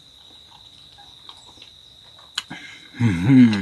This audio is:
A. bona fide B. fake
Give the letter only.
A